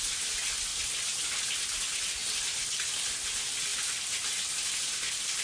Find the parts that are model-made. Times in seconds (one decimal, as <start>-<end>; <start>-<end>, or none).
none